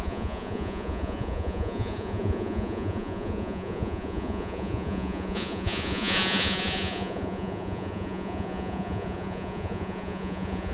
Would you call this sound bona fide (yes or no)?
no